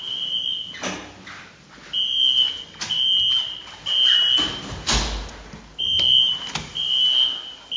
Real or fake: real